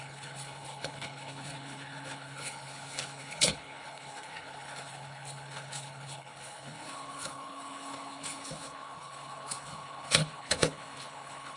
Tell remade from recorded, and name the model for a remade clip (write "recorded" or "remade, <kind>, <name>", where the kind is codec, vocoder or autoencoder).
remade, codec, HILCodec